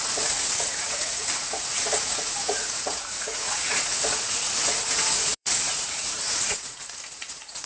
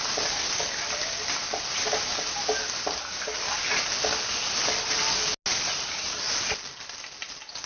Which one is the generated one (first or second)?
first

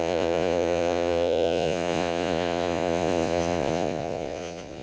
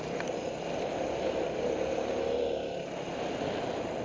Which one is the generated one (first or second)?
first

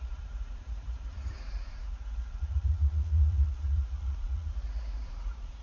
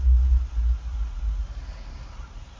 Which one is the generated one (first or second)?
first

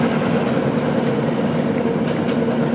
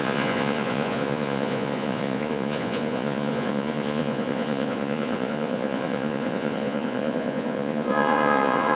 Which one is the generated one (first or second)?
second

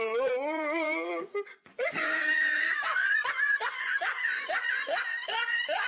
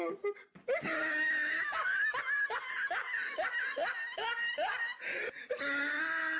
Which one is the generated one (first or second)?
first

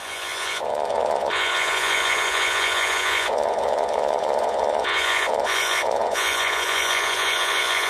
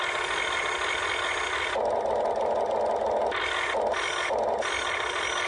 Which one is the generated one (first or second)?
first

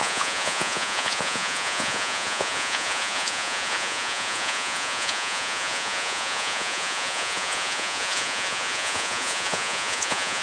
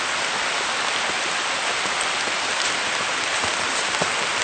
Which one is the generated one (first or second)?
first